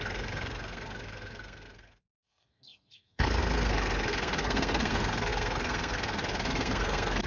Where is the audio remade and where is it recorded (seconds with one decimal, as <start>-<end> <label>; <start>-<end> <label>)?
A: 0.0-7.3 remade